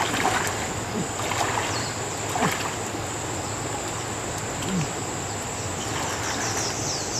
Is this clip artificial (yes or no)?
no